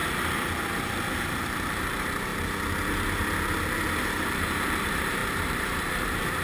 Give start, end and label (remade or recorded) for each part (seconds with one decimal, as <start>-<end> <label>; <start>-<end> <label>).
0.0-0.8 recorded; 0.8-2.3 remade; 2.3-4.2 recorded; 4.2-6.4 remade